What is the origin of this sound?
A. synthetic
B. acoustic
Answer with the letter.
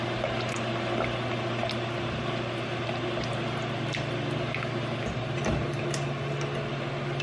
B